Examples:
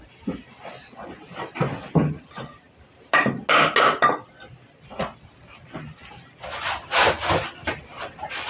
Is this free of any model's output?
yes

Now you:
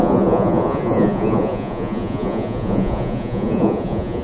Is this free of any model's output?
no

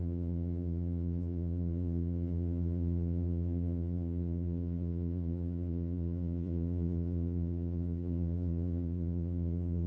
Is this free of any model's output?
no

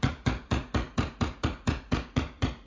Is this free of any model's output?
no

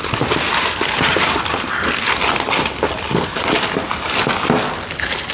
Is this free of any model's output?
yes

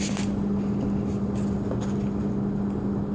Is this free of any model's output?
yes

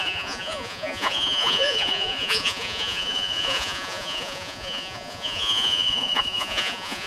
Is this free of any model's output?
no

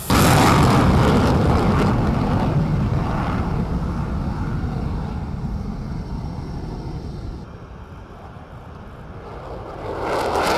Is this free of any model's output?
yes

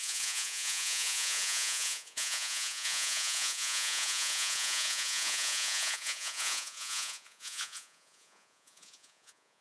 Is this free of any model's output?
no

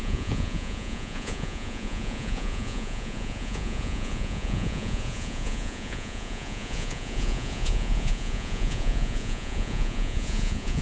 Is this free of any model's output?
no